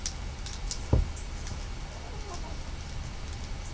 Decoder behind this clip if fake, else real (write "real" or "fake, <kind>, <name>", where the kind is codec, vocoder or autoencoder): real